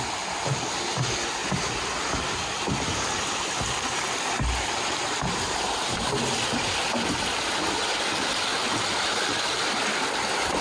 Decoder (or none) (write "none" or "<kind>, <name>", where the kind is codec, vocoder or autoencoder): none